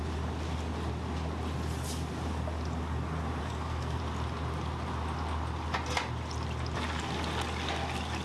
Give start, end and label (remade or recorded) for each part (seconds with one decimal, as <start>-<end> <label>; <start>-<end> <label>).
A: 0.0-3.4 recorded; 3.4-4.0 remade; 4.0-8.2 recorded